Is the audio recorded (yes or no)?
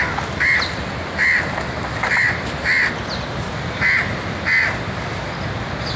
yes